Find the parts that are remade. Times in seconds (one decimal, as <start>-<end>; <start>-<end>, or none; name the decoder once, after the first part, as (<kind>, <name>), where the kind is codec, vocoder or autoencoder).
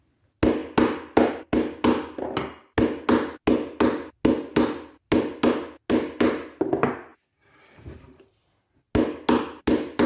none